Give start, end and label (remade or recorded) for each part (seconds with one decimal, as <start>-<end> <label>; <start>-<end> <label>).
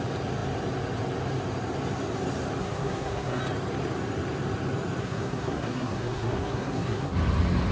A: 0.0-2.6 recorded; 2.6-3.4 remade; 3.4-5.0 recorded; 5.0-7.1 remade; 7.1-7.7 recorded